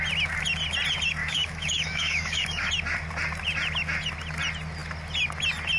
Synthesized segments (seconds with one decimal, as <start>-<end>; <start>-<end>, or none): 1.2-2.7